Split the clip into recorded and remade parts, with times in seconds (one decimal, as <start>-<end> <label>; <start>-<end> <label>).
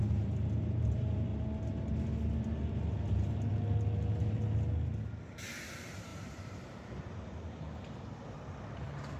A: 0.0-1.3 remade; 1.3-5.3 recorded; 5.3-9.2 remade